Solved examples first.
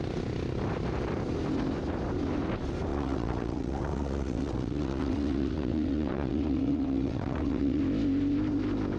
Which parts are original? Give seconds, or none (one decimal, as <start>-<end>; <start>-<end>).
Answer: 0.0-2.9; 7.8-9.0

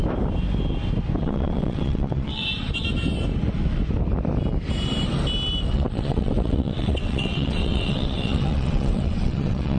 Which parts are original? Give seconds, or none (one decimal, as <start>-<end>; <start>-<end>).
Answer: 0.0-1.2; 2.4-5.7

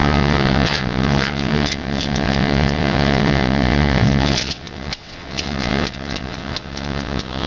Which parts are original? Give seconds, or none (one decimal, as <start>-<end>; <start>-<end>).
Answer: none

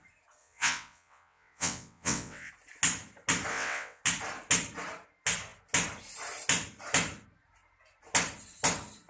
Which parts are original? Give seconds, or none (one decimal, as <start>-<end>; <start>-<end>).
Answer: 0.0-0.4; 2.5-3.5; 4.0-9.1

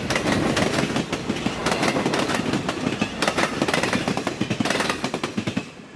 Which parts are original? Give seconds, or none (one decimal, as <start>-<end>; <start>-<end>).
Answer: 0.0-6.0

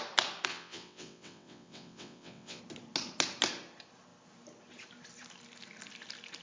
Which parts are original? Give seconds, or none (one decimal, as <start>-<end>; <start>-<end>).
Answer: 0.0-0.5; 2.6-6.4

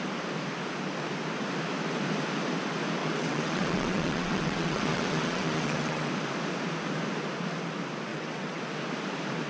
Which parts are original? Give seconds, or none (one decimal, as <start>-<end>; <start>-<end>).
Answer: 0.0-3.0; 6.1-8.1; 8.6-9.5

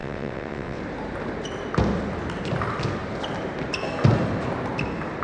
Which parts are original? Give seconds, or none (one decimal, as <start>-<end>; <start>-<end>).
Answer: 0.8-5.2